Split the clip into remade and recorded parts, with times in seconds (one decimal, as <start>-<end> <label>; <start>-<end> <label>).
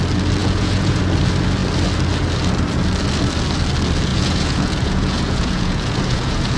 0.0-0.4 recorded; 0.4-1.0 remade; 1.0-4.1 recorded; 4.1-6.6 remade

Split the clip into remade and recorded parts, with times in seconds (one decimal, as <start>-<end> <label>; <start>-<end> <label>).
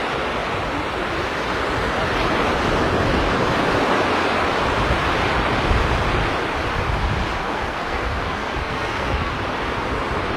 0.0-7.4 recorded; 7.4-9.3 remade; 9.3-10.4 recorded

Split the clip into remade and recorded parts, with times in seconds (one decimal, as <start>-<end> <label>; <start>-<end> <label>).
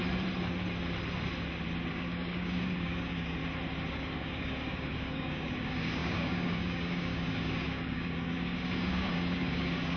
0.0-1.9 recorded; 1.9-3.4 remade; 3.4-3.9 recorded; 3.9-10.0 remade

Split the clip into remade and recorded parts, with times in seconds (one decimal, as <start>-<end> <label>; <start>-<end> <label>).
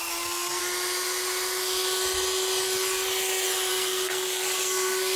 0.0-0.6 remade; 0.6-3.7 recorded; 3.7-5.2 remade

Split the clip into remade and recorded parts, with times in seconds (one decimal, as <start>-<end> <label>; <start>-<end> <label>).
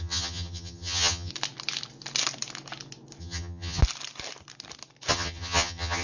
0.0-1.3 remade; 1.3-3.2 recorded; 3.2-3.8 remade; 3.8-5.1 recorded; 5.1-6.0 remade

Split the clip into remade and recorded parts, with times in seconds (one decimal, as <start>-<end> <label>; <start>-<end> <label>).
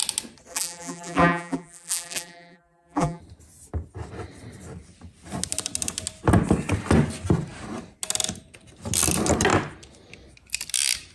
0.0-0.5 recorded; 0.5-3.2 remade; 3.2-11.1 recorded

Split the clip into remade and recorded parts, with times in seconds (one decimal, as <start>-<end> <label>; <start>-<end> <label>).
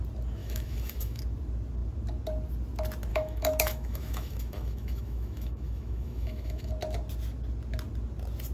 0.0-0.4 recorded; 0.4-1.2 remade; 1.2-3.1 recorded; 3.1-6.7 remade; 6.7-8.5 recorded